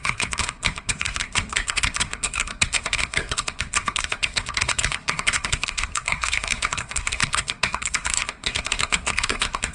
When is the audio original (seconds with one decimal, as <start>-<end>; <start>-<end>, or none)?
none